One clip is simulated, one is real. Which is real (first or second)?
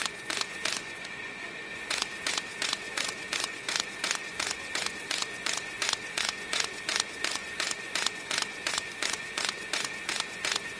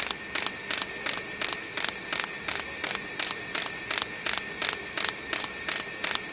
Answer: second